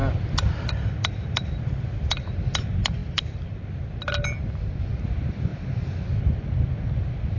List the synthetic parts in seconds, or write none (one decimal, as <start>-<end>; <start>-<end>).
none

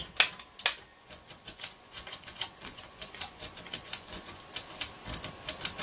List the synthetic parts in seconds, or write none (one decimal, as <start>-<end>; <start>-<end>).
0.9-4.4